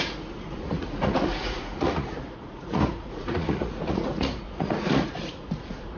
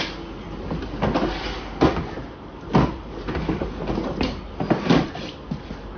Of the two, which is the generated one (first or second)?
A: first